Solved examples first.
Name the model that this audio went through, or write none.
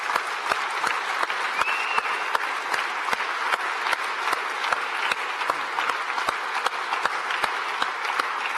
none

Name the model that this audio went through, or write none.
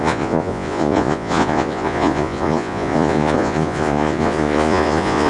vocoder, Vocos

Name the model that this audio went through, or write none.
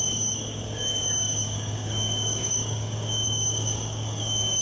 codec, DAC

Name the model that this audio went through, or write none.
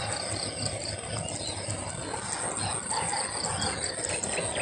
none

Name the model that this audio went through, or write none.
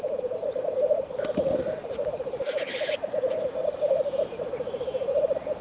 none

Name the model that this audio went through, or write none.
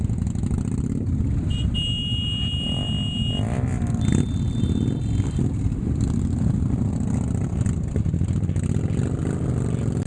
none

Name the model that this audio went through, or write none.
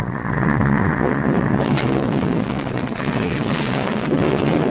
vocoder, WaveNeXt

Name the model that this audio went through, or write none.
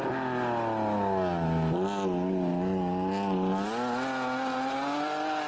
none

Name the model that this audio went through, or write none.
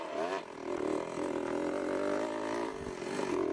none